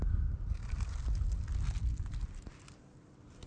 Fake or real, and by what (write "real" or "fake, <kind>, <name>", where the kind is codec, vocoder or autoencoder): real